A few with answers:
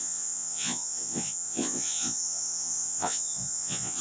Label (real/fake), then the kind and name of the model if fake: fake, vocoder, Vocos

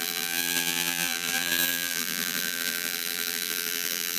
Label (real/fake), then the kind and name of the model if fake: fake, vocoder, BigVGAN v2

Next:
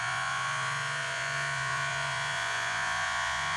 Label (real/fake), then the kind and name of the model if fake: fake, vocoder, Vocos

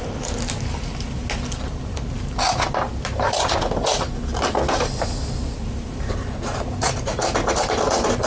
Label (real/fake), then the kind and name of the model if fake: real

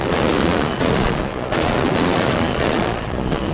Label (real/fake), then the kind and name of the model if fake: fake, vocoder, Vocos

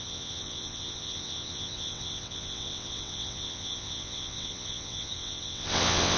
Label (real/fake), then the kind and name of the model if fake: fake, vocoder, WaveNeXt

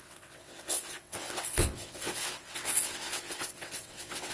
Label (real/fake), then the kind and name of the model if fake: fake, vocoder, WaveNeXt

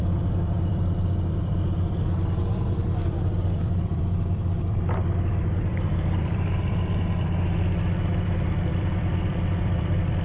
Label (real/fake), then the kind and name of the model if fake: fake, vocoder, BigVGAN v2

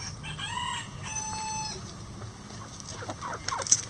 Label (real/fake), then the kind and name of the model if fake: real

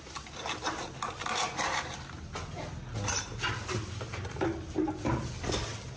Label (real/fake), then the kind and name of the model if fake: real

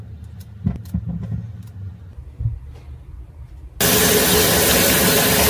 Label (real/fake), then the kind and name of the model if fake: real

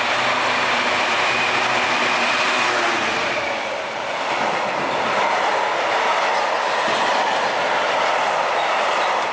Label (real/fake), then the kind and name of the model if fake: real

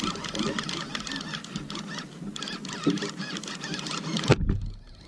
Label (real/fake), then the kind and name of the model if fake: real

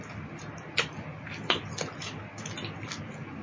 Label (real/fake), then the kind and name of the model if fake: real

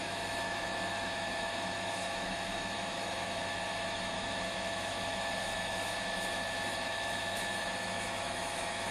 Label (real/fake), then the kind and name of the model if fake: fake, autoencoder, DAC-VAE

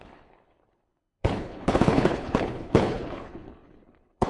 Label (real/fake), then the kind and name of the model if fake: fake, codec, HILCodec